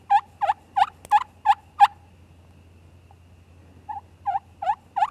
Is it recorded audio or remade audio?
recorded